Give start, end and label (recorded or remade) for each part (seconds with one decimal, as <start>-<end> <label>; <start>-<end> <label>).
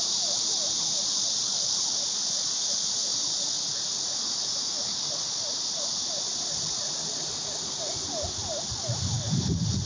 0.0-9.9 recorded